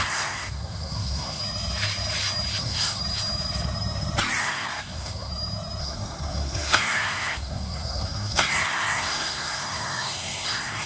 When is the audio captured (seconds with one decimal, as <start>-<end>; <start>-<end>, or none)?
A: 1.4-2.6; 3.0-4.4; 5.3-5.8